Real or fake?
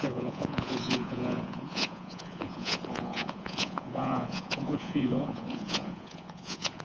fake